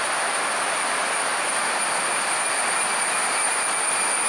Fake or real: real